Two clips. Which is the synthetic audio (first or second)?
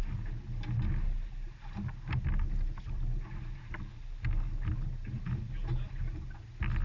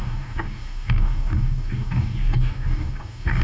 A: second